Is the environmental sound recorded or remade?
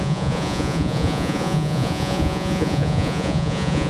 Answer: remade